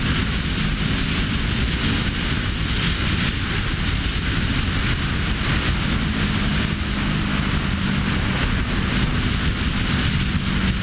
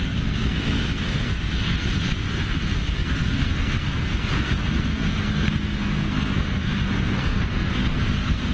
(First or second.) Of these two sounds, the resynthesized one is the second